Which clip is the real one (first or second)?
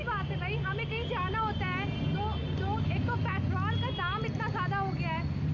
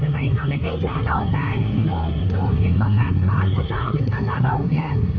first